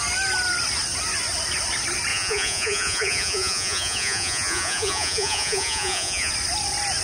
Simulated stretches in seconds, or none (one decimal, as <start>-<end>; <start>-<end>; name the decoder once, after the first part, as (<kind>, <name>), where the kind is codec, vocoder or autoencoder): 2.1-6.3 (vocoder, Vocos)